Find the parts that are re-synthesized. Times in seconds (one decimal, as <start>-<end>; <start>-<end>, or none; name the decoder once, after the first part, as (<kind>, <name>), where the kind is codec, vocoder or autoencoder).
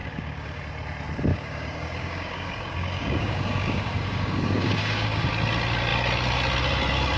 0.0-0.6 (codec, DAC); 1.3-5.3